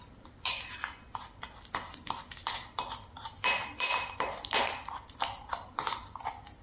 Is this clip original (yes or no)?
no